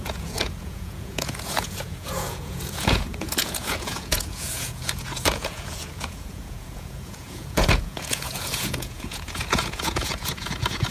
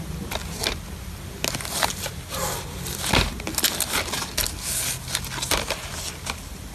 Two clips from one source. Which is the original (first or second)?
second